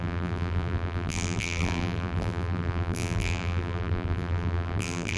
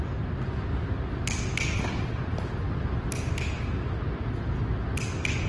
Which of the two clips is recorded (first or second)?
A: second